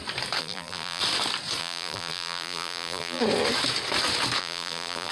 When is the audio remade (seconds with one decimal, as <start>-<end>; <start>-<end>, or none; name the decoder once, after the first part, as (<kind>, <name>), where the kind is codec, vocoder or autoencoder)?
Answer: 0.4-1.0 (vocoder, BigVGAN v2); 1.6-3.2; 4.4-5.1